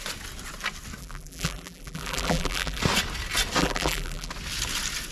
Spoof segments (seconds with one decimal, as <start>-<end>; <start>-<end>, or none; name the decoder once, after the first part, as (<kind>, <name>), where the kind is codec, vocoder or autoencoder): 1.0-2.8 (vocoder, BigVGAN v2); 3.6-4.3